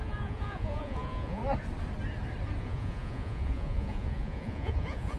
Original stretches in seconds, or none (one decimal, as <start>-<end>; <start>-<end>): 1.4-2.6